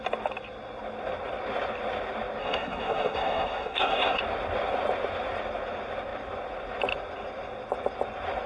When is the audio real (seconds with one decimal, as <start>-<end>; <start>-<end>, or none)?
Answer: 0.0-2.4; 4.2-8.5

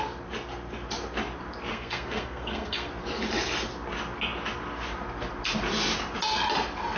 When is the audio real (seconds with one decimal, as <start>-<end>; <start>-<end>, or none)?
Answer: 0.0-1.7; 2.9-7.0

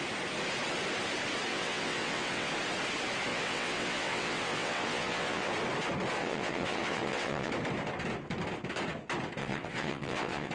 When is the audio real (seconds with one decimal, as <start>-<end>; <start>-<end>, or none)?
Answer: 0.0-1.5; 2.5-3.3; 5.5-6.2; 7.5-9.4

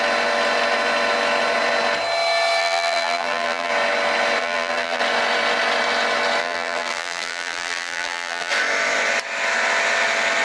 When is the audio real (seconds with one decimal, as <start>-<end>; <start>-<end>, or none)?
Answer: 0.0-2.6; 3.7-4.4; 5.0-6.4; 8.5-10.4

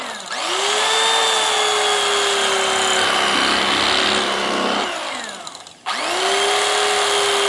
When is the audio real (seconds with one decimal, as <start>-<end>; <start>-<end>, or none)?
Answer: 0.0-7.5

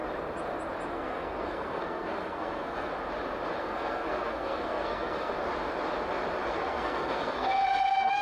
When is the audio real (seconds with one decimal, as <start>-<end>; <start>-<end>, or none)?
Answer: 0.0-0.9; 2.9-3.6; 5.3-6.5

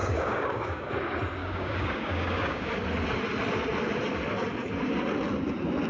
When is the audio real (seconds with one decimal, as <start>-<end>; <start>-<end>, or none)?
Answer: 0.9-1.4; 2.7-5.9

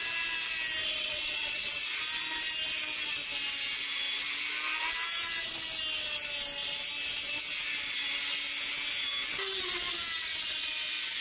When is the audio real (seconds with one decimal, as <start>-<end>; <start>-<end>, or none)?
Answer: 0.0-0.8; 2.0-10.2; 10.7-11.2